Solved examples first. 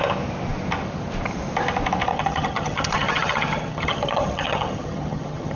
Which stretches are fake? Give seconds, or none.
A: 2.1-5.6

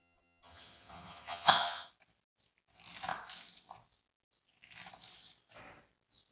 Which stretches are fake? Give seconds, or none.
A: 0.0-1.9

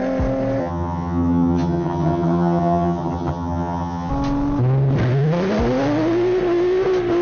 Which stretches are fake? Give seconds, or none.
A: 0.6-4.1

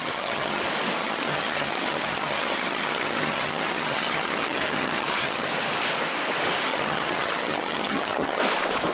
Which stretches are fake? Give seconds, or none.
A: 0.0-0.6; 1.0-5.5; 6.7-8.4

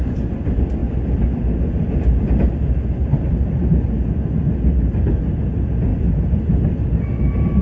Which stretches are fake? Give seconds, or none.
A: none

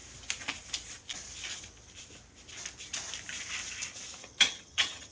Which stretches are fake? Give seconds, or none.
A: 4.2-5.1